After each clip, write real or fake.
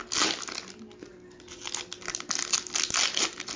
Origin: real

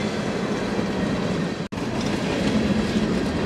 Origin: real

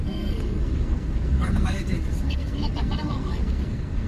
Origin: fake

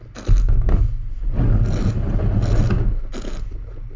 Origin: real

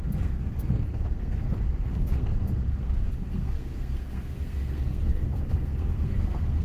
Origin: fake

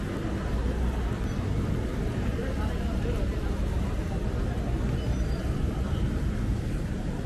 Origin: real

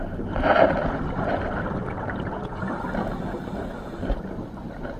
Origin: real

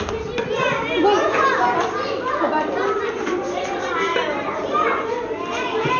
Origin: real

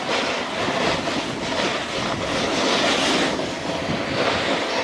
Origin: real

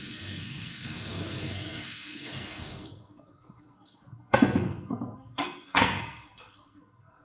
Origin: fake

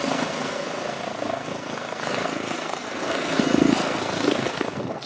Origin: fake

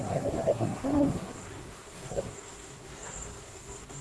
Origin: fake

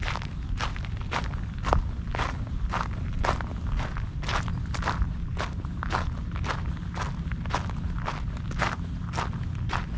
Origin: real